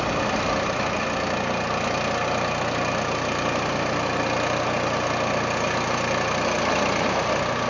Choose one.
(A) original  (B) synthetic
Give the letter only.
A